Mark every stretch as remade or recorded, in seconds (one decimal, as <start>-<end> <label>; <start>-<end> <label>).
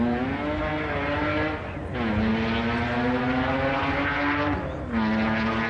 0.0-5.7 recorded